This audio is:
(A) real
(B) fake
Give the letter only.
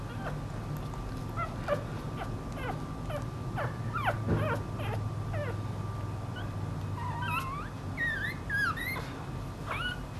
A